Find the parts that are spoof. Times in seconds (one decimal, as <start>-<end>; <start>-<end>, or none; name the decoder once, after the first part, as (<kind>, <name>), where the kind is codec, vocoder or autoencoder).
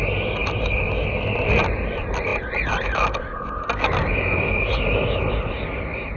none